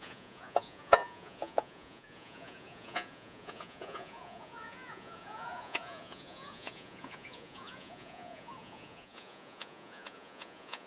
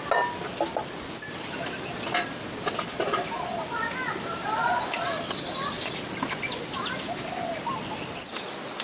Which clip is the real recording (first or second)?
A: second